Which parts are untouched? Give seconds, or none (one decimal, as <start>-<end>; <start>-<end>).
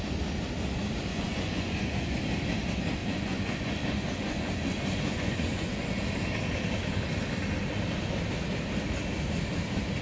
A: 0.0-1.1; 2.2-3.0; 6.0-10.0